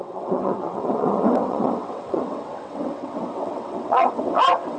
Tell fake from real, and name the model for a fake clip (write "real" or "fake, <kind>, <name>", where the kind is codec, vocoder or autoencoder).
fake, vocoder, WaveNeXt